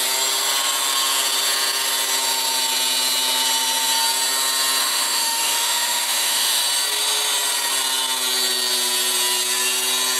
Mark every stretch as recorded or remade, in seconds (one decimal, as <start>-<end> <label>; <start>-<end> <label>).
0.0-4.8 recorded; 4.8-6.6 remade; 6.6-10.2 recorded